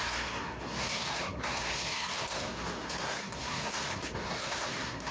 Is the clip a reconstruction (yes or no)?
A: yes